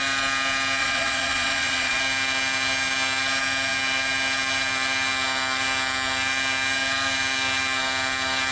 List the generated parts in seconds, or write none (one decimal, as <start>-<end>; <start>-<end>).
0.8-2.0